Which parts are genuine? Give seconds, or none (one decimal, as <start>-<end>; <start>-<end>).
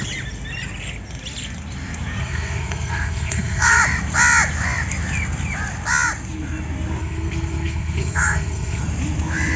0.0-2.2; 3.8-7.0; 8.8-9.6